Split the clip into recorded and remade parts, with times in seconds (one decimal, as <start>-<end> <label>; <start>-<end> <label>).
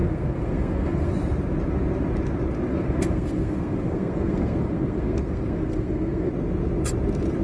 0.0-1.1 remade; 1.1-2.7 recorded; 2.7-6.3 remade; 6.3-7.4 recorded